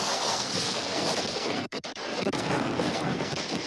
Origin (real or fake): fake